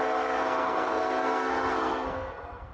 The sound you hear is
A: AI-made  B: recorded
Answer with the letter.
A